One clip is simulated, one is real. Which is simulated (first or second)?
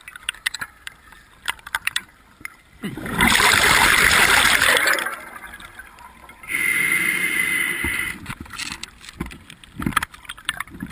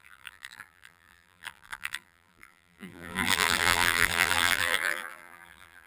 second